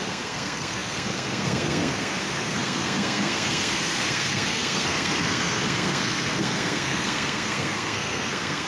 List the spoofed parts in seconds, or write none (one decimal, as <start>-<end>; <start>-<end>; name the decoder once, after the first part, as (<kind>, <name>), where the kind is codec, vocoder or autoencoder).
0.0-8.7 (codec, SNAC)